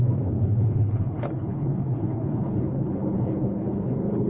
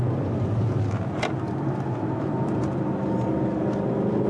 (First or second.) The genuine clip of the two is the second